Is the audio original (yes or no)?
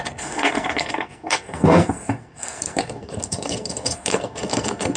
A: no